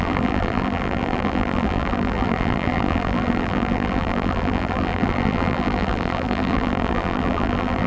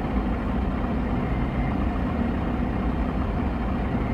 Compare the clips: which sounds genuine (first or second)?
second